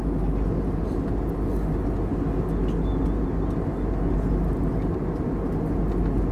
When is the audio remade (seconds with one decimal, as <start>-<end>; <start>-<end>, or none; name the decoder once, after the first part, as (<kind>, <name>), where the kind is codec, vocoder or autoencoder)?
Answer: none